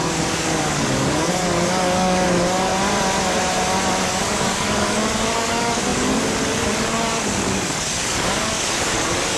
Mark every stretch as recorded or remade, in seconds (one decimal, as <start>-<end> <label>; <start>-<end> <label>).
0.0-2.7 remade; 2.7-4.0 recorded; 4.0-9.4 remade